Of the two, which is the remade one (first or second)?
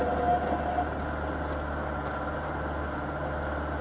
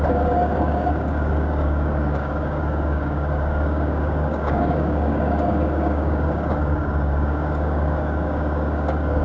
second